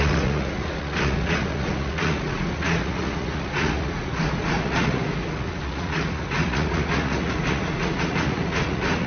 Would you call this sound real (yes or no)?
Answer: no